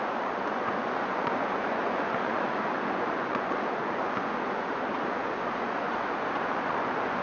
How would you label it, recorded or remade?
remade